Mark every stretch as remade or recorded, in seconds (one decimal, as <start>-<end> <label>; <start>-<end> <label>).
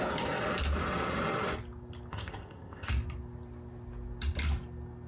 0.0-2.1 recorded; 2.1-2.9 remade; 2.9-5.1 recorded